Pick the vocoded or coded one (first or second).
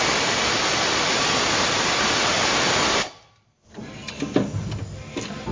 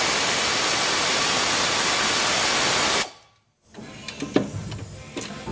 first